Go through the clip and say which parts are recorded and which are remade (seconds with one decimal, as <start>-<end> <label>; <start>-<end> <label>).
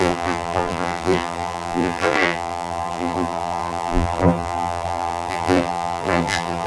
0.0-6.7 remade